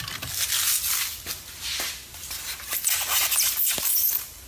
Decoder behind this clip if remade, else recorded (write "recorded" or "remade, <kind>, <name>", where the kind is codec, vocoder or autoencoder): recorded